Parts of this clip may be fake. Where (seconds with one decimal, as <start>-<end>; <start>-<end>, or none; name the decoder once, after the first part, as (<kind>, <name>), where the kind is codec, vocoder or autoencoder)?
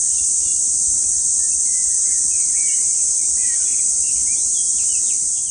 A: 0.0-1.8 (vocoder, BigVGAN v2); 2.3-4.5; 5.1-5.5